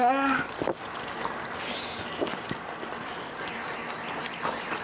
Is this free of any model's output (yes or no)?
yes